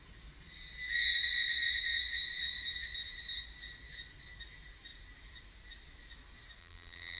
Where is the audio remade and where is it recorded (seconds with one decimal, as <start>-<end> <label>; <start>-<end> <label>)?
0.0-6.6 recorded; 6.6-7.2 remade